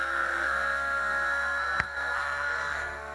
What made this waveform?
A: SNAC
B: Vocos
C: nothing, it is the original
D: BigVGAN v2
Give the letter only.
A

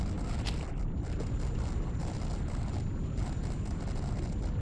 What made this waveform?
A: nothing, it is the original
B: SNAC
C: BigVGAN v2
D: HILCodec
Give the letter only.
A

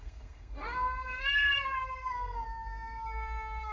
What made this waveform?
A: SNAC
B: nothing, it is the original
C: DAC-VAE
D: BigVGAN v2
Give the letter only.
A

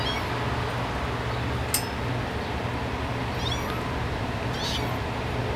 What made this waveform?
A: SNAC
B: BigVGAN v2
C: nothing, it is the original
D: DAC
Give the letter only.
C